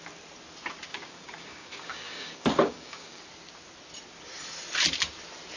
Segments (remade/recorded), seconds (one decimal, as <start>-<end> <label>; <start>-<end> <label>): 0.0-0.9 recorded; 0.9-3.2 remade; 3.2-5.6 recorded